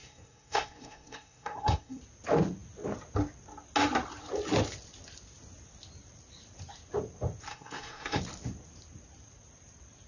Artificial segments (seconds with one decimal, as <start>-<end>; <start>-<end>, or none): 0.0-2.0; 7.5-8.2